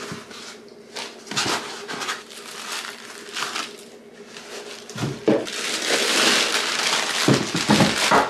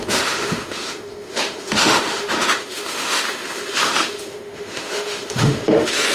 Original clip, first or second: first